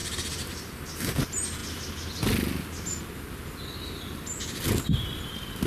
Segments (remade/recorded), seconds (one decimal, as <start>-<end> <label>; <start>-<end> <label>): 0.0-1.2 remade; 1.2-5.7 recorded